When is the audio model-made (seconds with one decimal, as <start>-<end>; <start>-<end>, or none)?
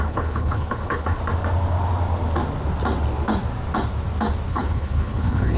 0.0-1.2; 4.5-5.6